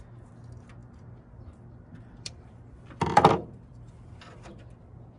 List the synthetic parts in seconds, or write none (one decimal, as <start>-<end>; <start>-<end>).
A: 0.8-3.9